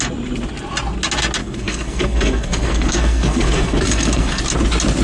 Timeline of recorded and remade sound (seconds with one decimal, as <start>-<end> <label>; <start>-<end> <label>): 0.0-1.4 recorded; 1.4-4.4 remade; 4.4-5.0 recorded